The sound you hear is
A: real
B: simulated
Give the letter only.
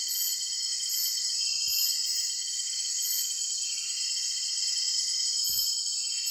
A